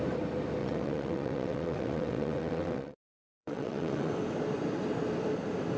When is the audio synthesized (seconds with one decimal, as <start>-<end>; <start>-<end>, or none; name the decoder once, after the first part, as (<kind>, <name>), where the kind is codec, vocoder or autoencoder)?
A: 0.6-4.1 (vocoder, WaveNeXt)